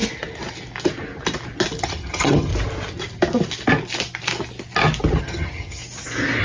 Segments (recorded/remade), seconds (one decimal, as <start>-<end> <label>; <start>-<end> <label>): 0.0-1.8 recorded; 1.8-2.5 remade; 2.5-5.2 recorded; 5.2-5.8 remade; 5.8-6.4 recorded